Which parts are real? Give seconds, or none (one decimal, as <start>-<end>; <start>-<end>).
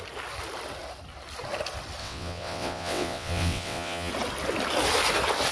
0.0-2.0; 4.1-5.5